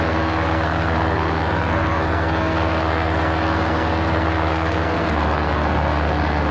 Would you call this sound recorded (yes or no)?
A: no